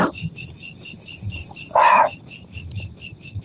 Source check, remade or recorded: recorded